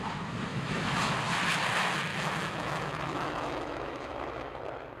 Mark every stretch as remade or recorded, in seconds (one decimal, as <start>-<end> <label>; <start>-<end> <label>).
0.0-0.5 recorded; 0.5-1.2 remade; 1.2-2.1 recorded; 2.1-4.6 remade; 4.6-5.0 recorded